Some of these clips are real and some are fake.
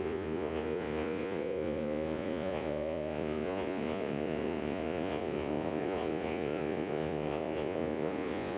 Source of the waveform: fake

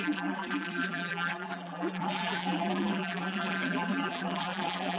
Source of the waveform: fake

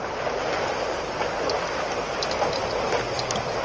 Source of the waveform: real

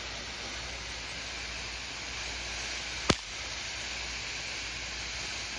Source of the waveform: real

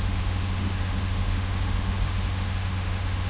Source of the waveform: fake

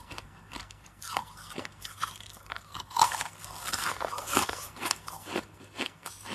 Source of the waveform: fake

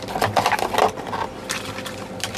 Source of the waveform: real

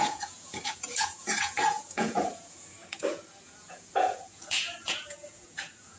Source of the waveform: fake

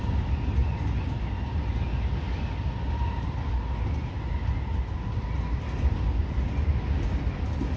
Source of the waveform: real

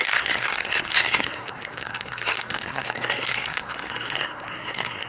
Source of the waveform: fake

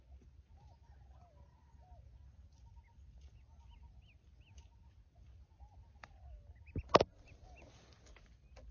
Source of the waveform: real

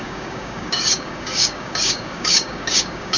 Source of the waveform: fake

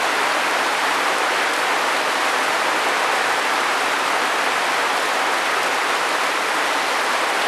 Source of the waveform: fake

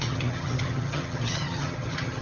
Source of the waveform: fake